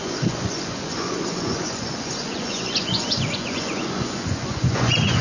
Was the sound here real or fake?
fake